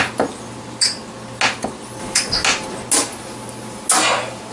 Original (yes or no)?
yes